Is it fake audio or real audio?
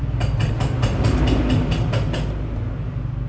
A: real